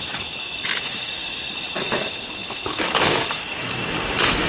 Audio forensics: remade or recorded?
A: remade